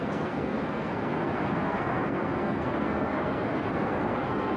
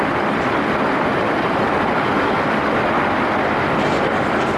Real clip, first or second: second